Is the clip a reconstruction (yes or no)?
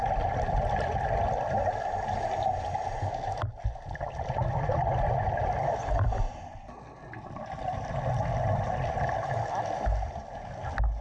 no